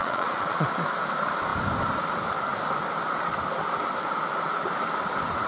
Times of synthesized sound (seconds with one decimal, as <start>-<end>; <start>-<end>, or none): 0.0-0.7